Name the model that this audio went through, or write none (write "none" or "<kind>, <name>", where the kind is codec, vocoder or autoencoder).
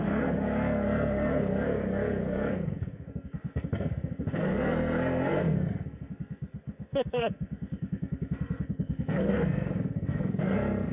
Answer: codec, SNAC